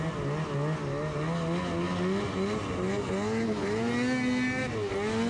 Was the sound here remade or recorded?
recorded